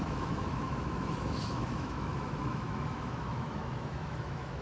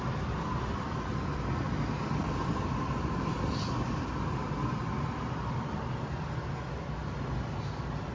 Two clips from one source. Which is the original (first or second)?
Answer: second